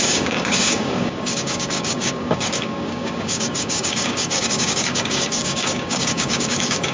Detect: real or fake fake